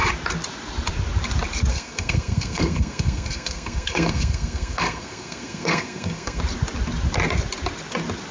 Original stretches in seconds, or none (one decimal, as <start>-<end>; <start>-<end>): 0.0-1.7; 6.4-8.3